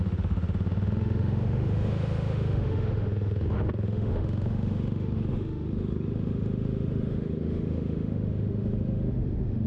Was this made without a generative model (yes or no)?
no